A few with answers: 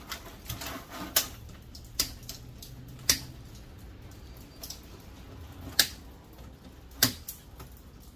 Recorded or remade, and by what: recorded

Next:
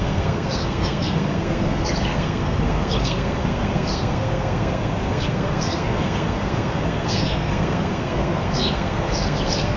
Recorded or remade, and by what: remade, codec, SNAC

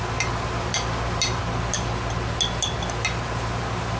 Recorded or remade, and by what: recorded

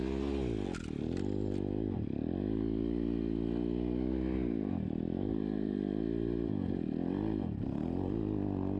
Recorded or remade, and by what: recorded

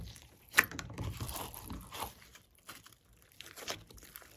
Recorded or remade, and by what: remade, vocoder, BigVGAN v2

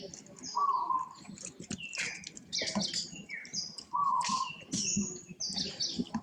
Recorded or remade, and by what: recorded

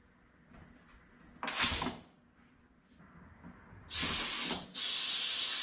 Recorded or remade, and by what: recorded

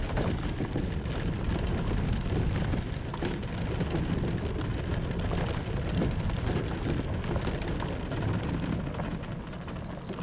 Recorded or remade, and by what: recorded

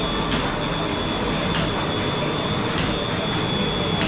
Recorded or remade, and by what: recorded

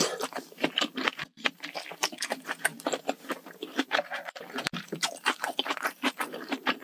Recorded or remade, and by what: remade, vocoder, BigVGAN v2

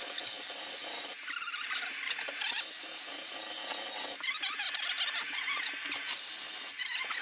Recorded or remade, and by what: recorded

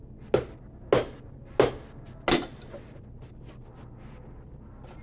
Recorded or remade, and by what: recorded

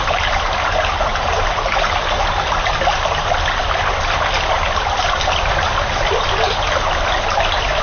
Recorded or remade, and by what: recorded